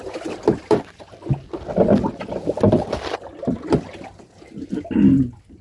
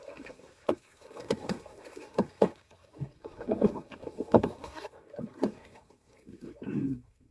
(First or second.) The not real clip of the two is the second